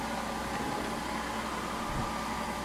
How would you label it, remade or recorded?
recorded